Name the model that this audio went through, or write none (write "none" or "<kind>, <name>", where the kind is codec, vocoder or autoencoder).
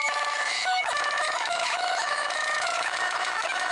autoencoder, DAC-VAE